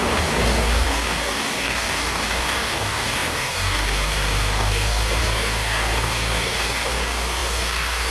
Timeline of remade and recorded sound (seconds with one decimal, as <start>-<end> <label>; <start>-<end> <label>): 0.0-8.1 remade